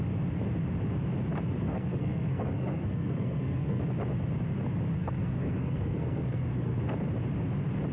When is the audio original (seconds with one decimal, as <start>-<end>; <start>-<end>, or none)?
0.0-1.6; 3.8-5.0; 6.8-7.9